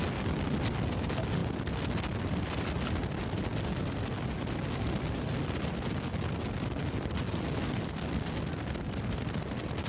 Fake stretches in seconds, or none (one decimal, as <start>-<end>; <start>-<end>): none

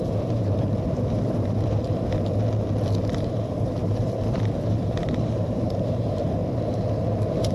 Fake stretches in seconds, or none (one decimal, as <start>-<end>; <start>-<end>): 0.0-1.8; 3.6-6.4

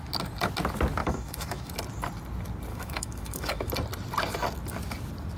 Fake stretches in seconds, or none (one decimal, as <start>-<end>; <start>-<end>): 1.0-1.7; 2.7-3.7

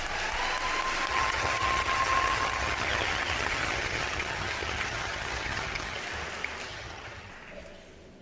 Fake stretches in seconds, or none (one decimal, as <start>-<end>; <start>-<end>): 1.1-6.0; 6.7-7.3

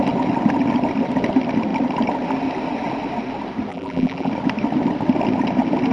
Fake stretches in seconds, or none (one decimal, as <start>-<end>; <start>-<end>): 3.7-4.3

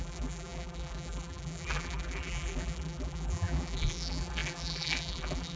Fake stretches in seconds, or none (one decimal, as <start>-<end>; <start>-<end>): 0.0-5.6